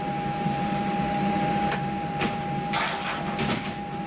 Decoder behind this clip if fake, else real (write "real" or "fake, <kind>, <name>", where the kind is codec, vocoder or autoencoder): real